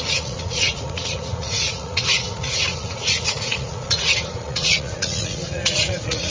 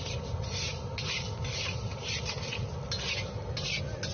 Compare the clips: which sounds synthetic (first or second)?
first